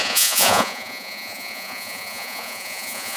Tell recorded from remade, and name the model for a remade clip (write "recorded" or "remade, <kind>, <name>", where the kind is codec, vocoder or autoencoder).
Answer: remade, vocoder, Vocos